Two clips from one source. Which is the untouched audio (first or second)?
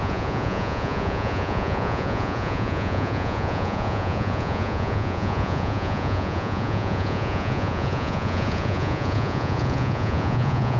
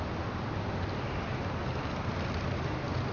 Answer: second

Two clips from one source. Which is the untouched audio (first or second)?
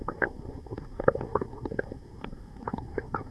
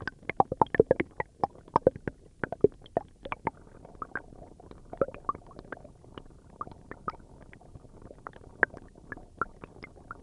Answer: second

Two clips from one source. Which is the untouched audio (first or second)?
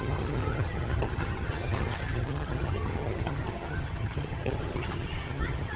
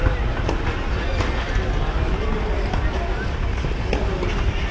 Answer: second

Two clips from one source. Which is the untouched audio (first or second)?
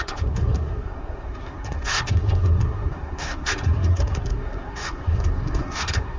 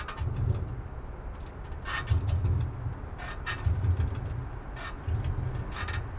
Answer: second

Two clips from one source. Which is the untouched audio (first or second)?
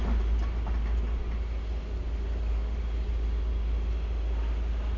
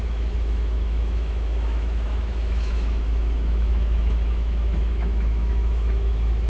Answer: first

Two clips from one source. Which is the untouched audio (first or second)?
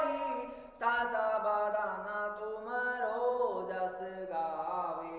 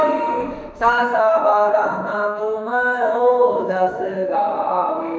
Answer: first